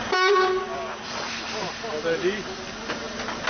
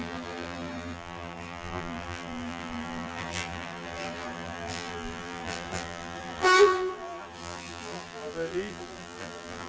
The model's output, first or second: second